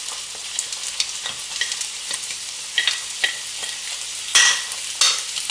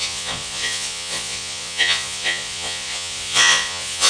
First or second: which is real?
first